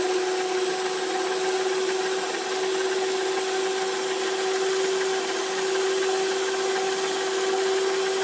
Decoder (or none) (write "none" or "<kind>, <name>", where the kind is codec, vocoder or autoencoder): none